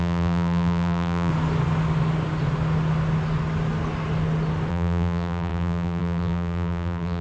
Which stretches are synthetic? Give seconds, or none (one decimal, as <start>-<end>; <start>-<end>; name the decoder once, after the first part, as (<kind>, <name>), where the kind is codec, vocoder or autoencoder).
0.0-1.3 (vocoder, BigVGAN v2); 4.7-7.2